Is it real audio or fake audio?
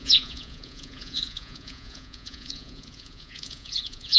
fake